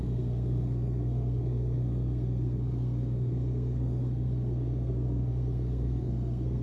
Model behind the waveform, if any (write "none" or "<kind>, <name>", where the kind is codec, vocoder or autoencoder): codec, SNAC